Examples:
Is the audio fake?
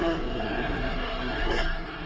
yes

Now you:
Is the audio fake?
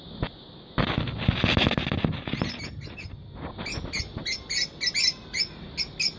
no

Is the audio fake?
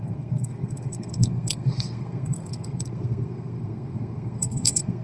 yes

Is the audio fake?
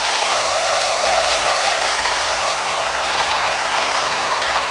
yes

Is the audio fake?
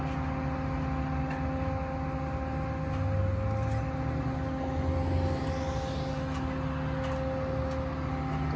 no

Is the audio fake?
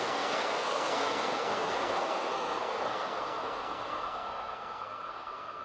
yes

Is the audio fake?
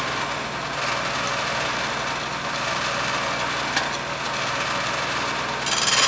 no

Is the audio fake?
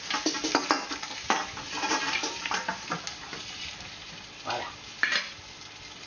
no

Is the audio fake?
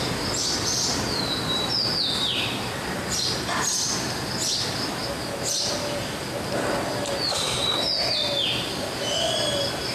no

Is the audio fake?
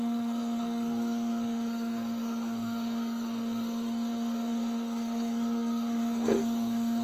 yes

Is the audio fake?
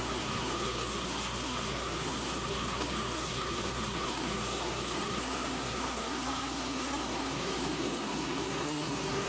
yes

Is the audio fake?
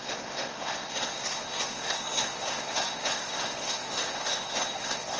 yes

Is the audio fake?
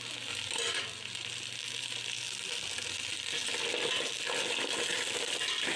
no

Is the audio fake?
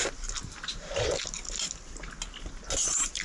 no